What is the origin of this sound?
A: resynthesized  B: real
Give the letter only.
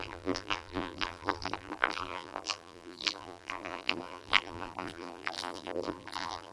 A